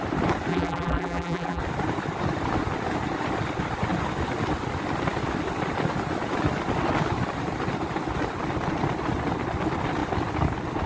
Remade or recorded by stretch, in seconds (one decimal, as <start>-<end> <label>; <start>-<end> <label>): 0.0-0.5 recorded; 0.5-1.6 remade; 1.6-10.9 recorded